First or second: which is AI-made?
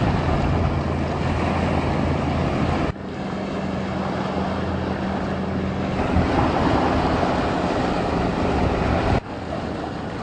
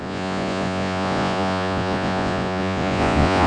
second